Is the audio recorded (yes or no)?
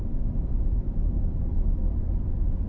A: no